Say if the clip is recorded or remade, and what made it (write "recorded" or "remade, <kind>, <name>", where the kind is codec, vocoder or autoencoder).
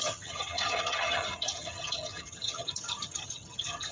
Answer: remade, vocoder, HiFi-GAN